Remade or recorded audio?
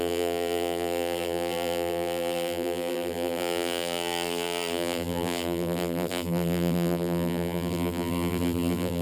remade